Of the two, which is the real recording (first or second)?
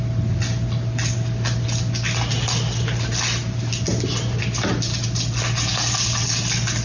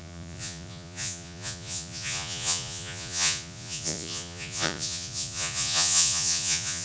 first